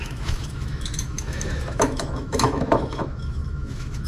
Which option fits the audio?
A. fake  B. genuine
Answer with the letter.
A